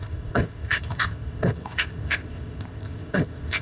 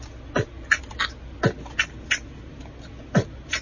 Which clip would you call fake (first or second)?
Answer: first